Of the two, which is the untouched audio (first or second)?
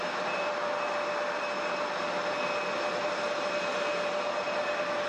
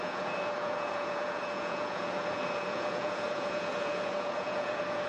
first